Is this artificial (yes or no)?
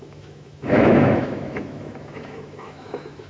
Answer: yes